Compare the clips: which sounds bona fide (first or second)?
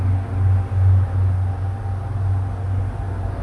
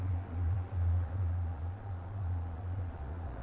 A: first